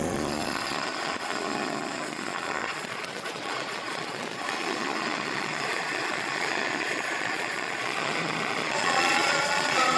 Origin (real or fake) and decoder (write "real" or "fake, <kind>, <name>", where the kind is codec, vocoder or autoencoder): fake, vocoder, Vocos